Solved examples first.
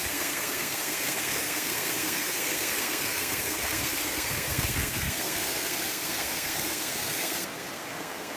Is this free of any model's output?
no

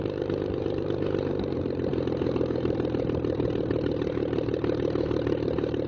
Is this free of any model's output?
no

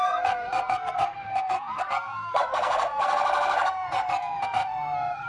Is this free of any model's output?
no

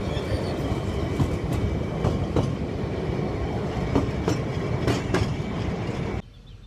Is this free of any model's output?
yes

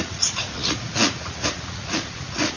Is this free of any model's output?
no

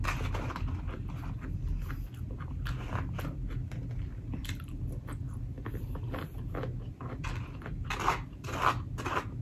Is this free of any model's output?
yes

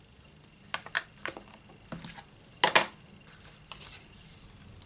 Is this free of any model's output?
yes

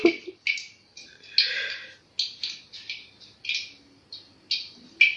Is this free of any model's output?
yes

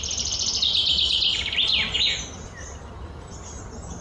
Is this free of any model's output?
yes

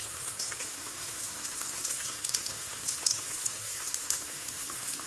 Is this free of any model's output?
no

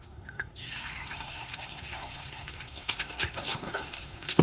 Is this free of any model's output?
no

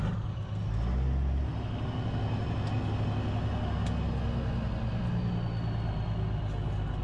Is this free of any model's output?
yes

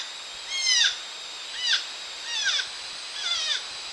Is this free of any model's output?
yes